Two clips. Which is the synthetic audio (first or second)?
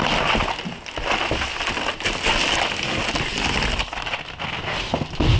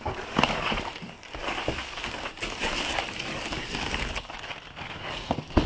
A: second